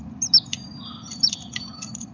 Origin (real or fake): real